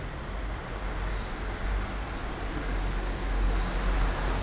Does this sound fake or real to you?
real